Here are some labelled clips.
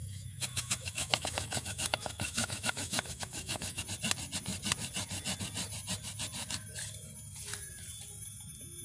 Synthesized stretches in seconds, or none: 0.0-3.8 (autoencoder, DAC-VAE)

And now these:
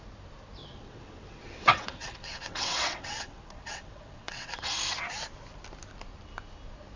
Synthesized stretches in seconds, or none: 0.6-4.8 (vocoder, WaveNeXt)

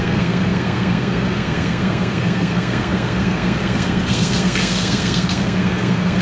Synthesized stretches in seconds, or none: 0.0-6.2 (codec, SNAC)

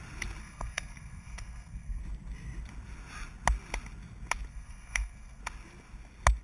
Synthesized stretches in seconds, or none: 0.4-2.0 (codec, SNAC); 4.5-5.4

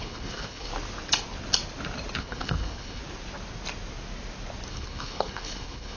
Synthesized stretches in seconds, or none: 0.0-0.7 (codec, HILCodec); 2.2-3.0; 4.7-6.0

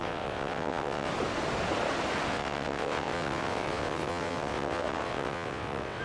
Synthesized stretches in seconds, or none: 0.0-1.1 (vocoder, WaveNeXt); 2.3-6.0

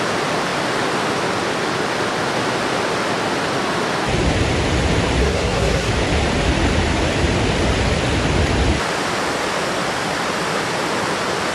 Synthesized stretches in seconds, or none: 5.2-5.9 (codec, SNAC)

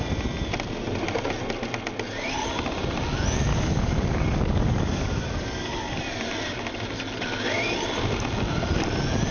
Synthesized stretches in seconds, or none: 3.5-6.0 (codec, DAC)